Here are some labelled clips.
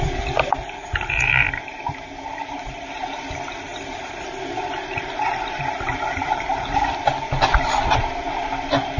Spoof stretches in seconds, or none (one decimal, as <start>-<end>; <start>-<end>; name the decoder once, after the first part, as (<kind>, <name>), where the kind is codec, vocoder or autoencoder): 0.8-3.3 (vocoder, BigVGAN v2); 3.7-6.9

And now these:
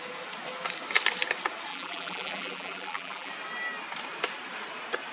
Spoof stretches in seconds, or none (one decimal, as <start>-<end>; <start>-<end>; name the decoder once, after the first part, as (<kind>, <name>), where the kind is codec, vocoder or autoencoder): 1.7-3.3 (vocoder, BigVGAN v2)

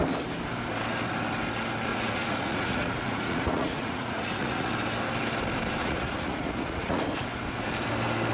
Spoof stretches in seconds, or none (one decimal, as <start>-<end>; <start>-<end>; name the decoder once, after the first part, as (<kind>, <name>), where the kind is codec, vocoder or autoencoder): 1.9-4.7 (vocoder, Vocos); 5.8-7.0

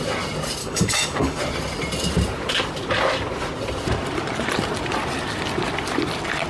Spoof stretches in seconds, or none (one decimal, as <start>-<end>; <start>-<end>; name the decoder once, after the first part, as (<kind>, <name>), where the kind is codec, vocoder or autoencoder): 0.6-1.4 (codec, DAC)

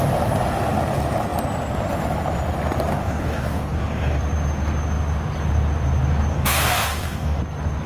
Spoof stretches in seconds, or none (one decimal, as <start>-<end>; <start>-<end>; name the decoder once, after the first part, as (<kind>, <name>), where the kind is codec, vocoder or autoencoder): 2.9-4.2 (codec, DAC); 6.3-7.4